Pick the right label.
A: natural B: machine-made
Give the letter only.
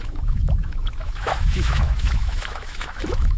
B